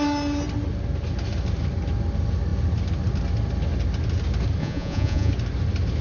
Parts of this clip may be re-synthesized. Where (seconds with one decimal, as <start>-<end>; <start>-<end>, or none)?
4.6-5.3